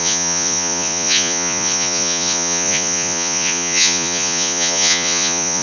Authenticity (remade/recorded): remade